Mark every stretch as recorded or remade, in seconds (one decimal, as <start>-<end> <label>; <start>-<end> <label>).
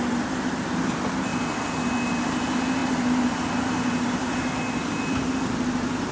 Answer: 0.0-1.3 remade; 1.3-2.1 recorded; 2.1-6.1 remade